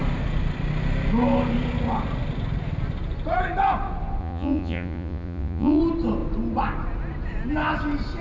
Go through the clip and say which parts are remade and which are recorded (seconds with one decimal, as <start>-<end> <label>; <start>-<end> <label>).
0.0-4.2 recorded; 4.2-5.8 remade; 5.8-8.2 recorded